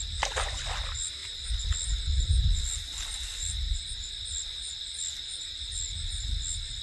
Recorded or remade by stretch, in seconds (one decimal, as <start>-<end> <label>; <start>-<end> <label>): 0.0-6.8 recorded